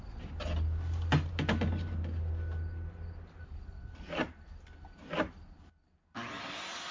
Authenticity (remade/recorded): recorded